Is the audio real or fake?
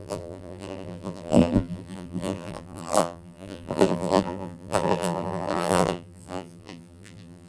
fake